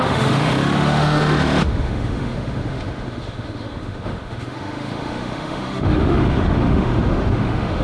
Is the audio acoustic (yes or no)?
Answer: no